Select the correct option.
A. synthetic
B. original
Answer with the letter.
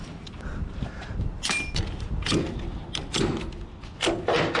B